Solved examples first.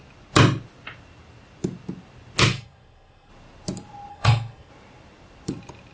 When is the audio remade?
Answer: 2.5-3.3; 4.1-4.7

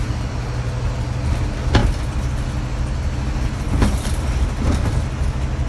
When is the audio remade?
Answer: none

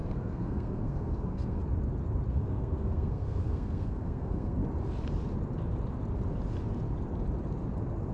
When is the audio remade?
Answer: 0.0-1.6; 2.3-4.6

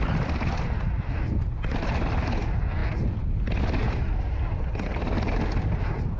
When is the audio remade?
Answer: none

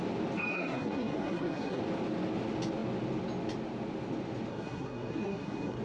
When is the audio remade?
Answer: 0.5-1.8; 4.5-5.8

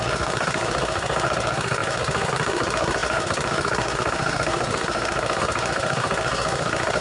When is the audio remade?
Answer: 0.0-7.0

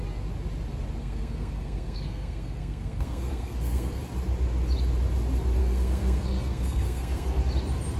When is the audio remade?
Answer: 1.0-4.0; 5.6-7.4